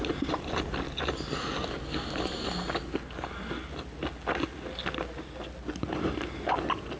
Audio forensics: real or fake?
real